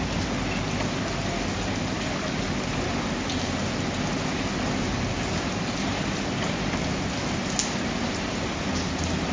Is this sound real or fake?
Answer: real